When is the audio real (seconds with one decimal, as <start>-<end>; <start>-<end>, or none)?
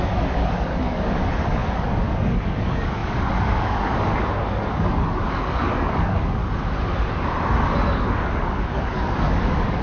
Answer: 6.4-7.9